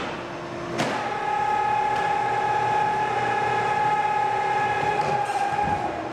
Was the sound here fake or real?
real